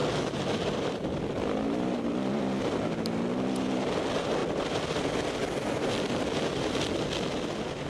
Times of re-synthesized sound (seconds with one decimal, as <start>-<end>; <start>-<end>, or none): none